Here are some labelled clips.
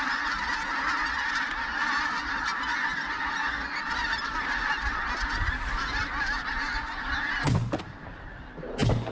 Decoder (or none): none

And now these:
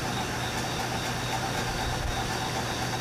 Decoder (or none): none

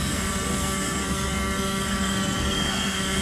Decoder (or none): codec, SNAC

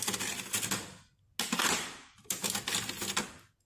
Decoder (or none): none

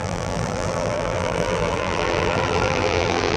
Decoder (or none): vocoder, BigVGAN v2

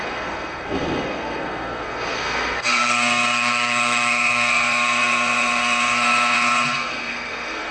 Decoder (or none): codec, SNAC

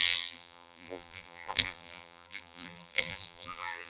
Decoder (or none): vocoder, BigVGAN v2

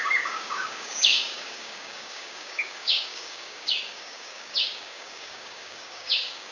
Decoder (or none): codec, DAC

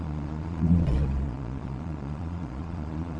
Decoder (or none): vocoder, Vocos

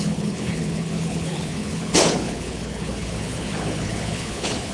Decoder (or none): codec, HILCodec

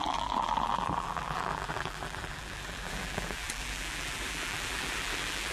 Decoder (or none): vocoder, BigVGAN v2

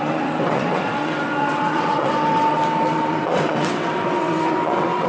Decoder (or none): vocoder, WaveNeXt